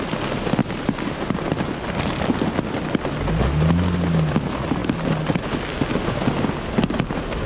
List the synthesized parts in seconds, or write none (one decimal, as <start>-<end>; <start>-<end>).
none